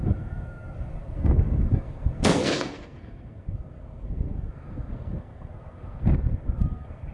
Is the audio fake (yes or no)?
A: yes